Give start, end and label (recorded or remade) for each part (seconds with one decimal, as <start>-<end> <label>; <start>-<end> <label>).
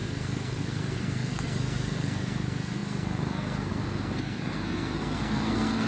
0.0-5.9 remade